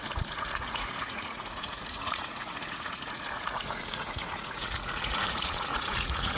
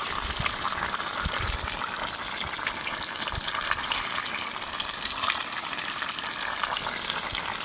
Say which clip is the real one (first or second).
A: second